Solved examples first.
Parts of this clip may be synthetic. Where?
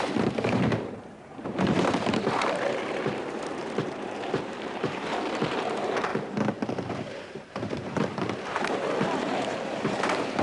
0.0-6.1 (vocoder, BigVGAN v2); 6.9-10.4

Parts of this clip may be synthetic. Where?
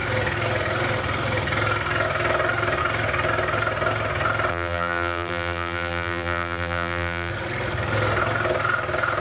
4.5-7.3 (vocoder, BigVGAN v2)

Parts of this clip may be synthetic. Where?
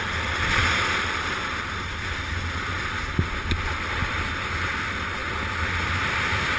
0.6-2.3 (vocoder, BigVGAN v2)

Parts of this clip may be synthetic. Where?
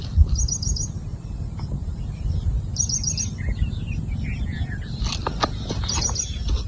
1.8-3.2 (vocoder, BigVGAN v2)